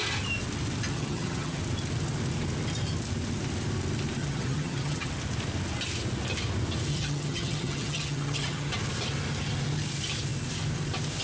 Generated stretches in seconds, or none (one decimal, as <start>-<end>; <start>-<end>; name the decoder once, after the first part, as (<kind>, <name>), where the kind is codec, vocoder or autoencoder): 0.9-1.6 (vocoder, HiFi-GAN); 4.2-5.1; 6.9-8.7